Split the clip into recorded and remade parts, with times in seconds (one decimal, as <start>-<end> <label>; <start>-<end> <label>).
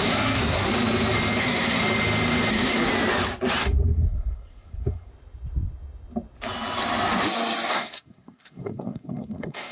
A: 0.0-0.7 remade; 0.7-1.4 recorded; 1.4-1.8 remade; 1.8-2.5 recorded; 2.5-2.9 remade; 2.9-3.6 recorded; 3.6-5.1 remade; 5.1-7.7 recorded; 7.7-9.7 remade